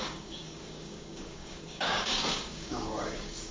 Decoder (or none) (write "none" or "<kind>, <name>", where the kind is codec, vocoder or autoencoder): codec, DAC